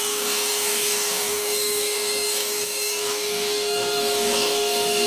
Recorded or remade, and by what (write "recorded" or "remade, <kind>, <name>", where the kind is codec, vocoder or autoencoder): remade, codec, DAC